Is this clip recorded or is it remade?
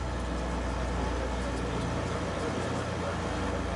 recorded